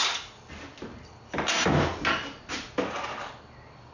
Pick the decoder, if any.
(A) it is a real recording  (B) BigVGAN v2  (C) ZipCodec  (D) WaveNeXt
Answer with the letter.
A